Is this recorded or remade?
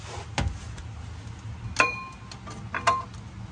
recorded